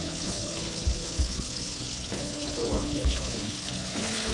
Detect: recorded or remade remade